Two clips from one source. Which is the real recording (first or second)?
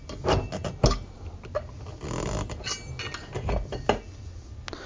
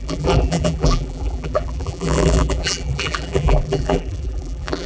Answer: first